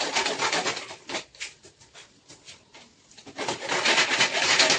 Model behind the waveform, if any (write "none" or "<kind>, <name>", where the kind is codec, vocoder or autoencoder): none